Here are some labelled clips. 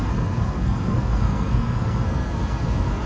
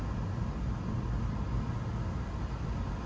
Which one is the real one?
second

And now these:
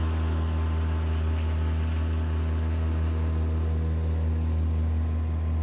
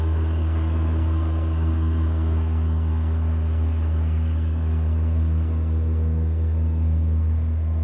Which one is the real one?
first